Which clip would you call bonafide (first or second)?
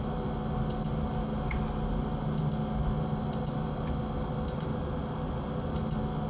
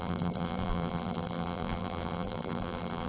first